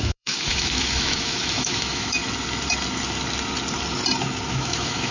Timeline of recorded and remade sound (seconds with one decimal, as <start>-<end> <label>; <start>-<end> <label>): 0.0-2.2 remade; 2.2-4.5 recorded; 4.5-5.1 remade